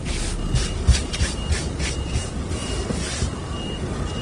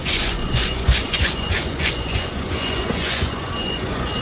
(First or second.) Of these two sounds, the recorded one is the first